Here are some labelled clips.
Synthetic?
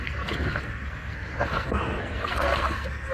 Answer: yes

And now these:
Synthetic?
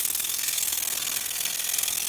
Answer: yes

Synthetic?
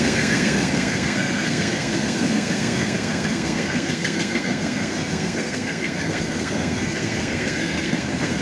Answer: yes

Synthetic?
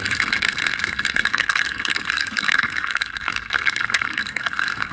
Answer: yes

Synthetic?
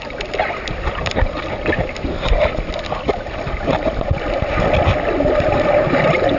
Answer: no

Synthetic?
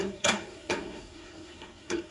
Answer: yes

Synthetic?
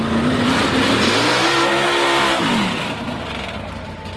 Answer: no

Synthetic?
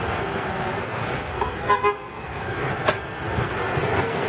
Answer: yes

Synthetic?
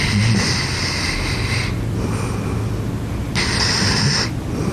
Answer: no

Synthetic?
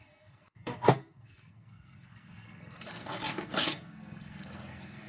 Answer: yes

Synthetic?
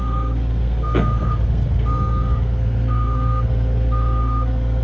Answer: yes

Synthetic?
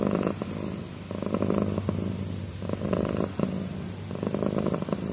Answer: no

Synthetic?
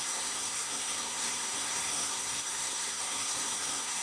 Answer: yes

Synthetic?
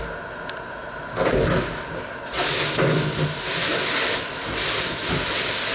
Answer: no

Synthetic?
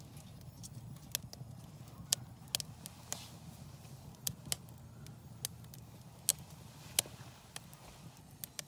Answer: no